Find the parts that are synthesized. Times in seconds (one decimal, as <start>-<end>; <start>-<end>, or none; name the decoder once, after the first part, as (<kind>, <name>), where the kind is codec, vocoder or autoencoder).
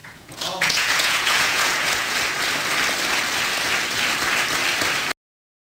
0.0-2.2 (vocoder, Vocos)